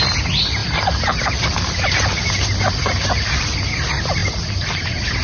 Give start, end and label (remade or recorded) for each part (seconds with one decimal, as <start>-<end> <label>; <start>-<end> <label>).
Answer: 0.0-5.2 recorded